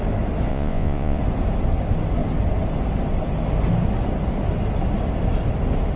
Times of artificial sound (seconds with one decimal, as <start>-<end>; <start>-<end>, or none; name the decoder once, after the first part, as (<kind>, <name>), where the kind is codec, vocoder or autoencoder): 0.5-1.2 (vocoder, Vocos)